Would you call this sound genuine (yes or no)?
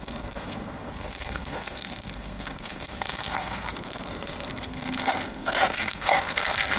no